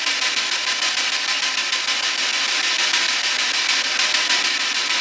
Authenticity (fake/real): real